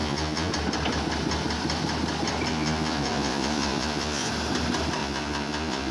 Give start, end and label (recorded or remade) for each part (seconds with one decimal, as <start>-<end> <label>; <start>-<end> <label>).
0.0-0.5 remade; 0.5-2.5 recorded; 2.5-4.3 remade; 4.3-5.0 recorded; 5.0-5.9 remade